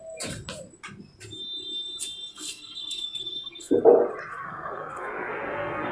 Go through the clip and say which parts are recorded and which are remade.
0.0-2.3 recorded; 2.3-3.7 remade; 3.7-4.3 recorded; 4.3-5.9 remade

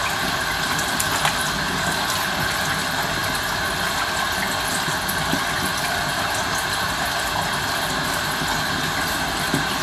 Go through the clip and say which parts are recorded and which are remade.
0.0-9.8 recorded

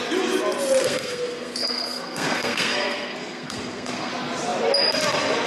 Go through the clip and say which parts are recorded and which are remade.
0.0-0.8 recorded; 0.8-4.1 remade; 4.1-5.5 recorded